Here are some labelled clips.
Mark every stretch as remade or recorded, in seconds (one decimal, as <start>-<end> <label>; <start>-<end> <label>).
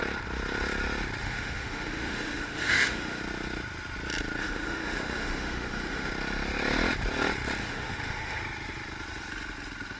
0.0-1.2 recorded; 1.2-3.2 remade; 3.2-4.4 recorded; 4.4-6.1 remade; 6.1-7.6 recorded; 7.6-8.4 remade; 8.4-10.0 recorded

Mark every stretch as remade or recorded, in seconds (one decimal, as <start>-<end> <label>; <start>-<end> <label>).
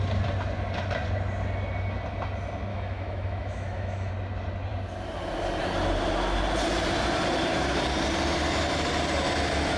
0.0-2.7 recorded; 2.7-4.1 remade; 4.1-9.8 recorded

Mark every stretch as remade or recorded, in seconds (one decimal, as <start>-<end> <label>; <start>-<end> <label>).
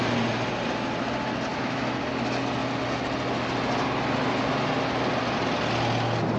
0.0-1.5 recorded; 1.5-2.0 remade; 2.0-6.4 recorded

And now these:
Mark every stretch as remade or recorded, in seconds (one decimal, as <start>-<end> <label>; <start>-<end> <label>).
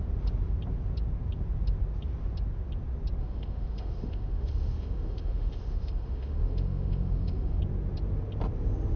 0.0-3.2 recorded; 3.2-7.6 remade; 7.6-9.0 recorded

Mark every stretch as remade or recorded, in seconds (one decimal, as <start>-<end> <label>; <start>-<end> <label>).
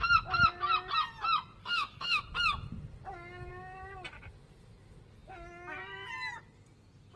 0.0-1.6 recorded; 1.6-2.2 remade; 2.2-7.2 recorded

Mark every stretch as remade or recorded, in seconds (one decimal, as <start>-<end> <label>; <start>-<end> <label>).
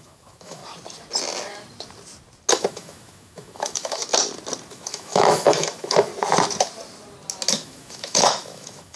0.0-0.6 remade; 0.6-2.5 recorded; 2.5-4.0 remade; 4.0-4.7 recorded; 4.7-6.1 remade; 6.1-7.5 recorded; 7.5-9.0 remade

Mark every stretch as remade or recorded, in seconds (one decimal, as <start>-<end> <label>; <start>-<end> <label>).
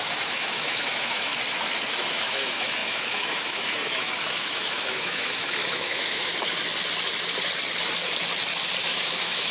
0.0-1.3 remade; 1.3-2.0 recorded; 2.0-6.3 remade; 6.3-8.8 recorded; 8.8-9.5 remade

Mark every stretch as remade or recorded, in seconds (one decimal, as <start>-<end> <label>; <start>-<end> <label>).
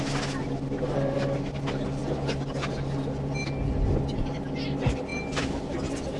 0.0-6.2 recorded